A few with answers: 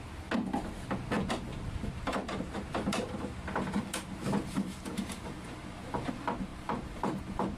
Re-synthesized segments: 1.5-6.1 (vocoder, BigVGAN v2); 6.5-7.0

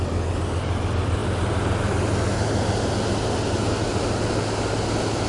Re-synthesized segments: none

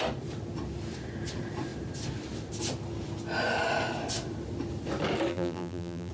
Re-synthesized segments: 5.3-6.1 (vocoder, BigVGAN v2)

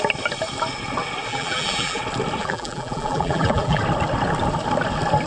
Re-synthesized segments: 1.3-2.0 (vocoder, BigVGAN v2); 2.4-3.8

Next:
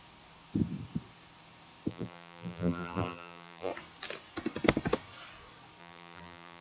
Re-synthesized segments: 1.9-3.7 (vocoder, BigVGAN v2); 5.8-6.6